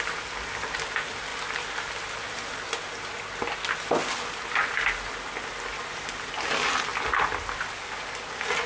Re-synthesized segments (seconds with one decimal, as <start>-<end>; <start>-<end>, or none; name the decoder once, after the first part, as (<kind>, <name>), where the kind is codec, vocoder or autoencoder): none